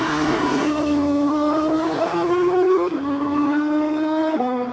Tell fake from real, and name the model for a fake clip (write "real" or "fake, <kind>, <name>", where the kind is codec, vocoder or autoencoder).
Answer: fake, codec, SNAC